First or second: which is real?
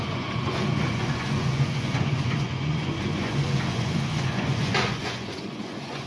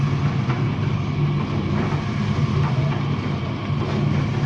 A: second